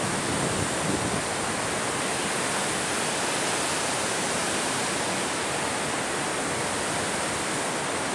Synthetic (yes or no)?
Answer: no